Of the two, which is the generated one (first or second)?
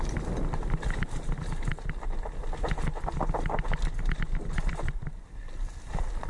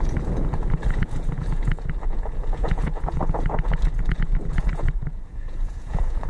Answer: second